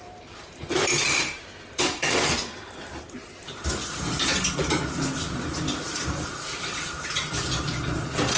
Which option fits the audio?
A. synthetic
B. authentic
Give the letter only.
A